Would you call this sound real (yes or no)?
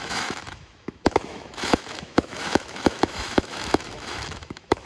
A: no